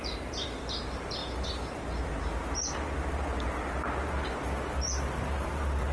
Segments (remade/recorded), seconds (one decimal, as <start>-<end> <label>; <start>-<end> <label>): 0.0-1.2 remade; 1.2-4.3 recorded; 4.3-5.9 remade